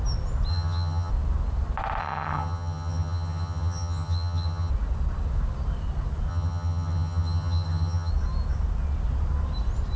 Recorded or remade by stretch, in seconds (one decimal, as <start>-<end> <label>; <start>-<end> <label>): 0.0-0.5 recorded; 0.5-1.1 remade; 1.1-2.0 recorded; 2.0-4.7 remade; 4.7-6.3 recorded; 6.3-8.1 remade; 8.1-10.0 recorded